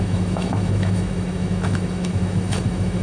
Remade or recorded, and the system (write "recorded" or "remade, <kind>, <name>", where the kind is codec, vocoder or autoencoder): remade, autoencoder, DAC-VAE